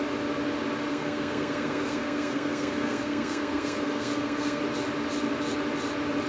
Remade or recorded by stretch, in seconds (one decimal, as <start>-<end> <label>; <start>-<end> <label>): 0.0-0.9 recorded; 0.9-4.6 remade; 4.6-6.3 recorded